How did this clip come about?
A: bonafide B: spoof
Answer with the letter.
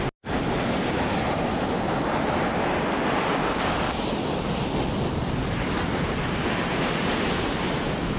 A